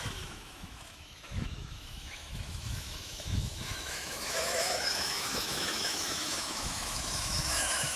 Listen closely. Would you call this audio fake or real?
fake